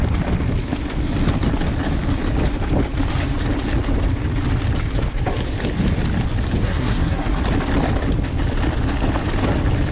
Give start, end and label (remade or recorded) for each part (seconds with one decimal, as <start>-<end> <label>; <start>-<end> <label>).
0.0-6.6 recorded; 6.6-7.4 remade; 7.4-9.9 recorded